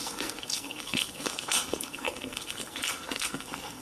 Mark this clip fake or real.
fake